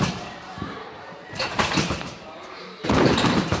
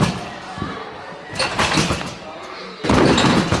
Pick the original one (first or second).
second